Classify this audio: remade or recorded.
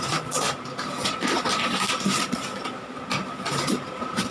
recorded